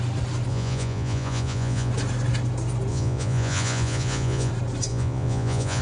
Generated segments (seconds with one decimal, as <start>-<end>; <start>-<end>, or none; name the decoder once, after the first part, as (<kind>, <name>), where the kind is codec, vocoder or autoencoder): 0.5-1.9 (vocoder, Vocos); 2.9-4.5; 4.9-5.8